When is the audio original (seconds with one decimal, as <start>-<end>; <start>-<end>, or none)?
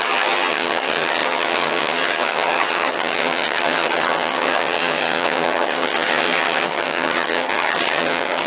none